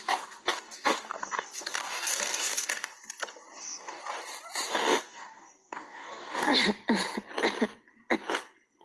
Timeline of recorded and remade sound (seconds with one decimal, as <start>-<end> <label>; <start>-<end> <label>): 0.0-2.9 remade; 2.9-3.6 recorded; 3.6-4.0 remade; 4.0-4.7 recorded; 4.7-6.5 remade; 6.5-8.8 recorded